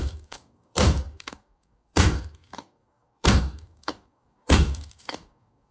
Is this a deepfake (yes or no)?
yes